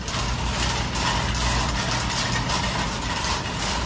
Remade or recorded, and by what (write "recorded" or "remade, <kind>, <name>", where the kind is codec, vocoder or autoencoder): recorded